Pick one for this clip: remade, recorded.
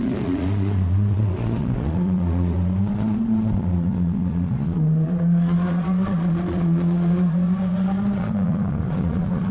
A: remade